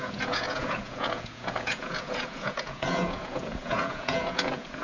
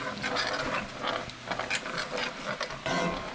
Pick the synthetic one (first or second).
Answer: first